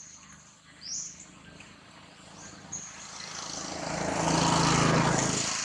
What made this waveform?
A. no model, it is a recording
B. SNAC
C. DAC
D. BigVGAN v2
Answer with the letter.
A